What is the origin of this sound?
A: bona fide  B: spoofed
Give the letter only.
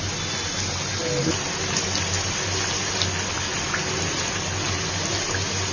A